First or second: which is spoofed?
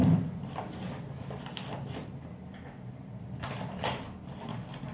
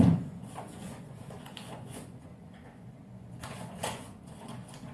second